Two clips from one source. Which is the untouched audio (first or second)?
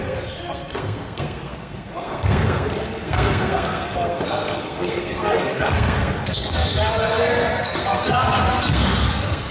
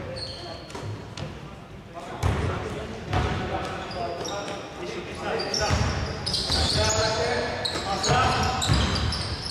second